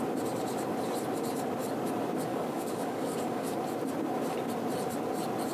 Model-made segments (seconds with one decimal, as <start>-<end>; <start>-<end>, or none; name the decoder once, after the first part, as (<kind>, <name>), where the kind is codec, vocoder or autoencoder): 2.3-3.6 (codec, DAC)

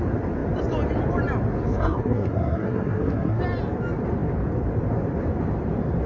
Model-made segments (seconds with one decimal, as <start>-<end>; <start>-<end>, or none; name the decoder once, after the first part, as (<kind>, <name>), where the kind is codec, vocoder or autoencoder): 1.7-3.4 (codec, SNAC)

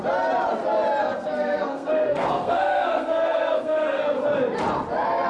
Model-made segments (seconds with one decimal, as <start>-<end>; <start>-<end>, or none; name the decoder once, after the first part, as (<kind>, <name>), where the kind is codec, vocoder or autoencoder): 1.0-4.2 (codec, SNAC)

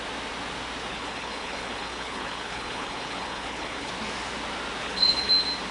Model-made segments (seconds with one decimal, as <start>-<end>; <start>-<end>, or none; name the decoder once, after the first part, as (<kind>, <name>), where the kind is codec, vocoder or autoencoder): 0.9-3.9 (codec, HILCodec); 4.8-5.3